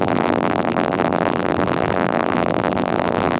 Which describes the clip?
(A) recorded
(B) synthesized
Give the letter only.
B